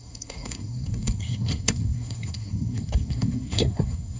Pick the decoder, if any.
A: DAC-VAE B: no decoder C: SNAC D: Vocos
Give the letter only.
C